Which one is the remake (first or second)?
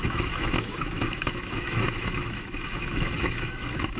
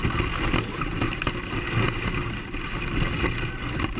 first